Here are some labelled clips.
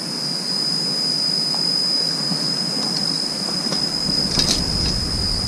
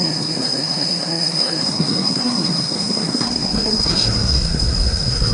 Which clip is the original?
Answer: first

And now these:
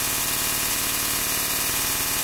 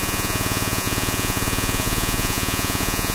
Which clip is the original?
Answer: first